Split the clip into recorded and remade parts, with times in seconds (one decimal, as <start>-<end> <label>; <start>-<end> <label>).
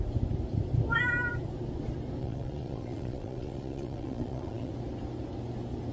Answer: 0.0-2.2 recorded; 2.2-4.7 remade; 4.7-5.9 recorded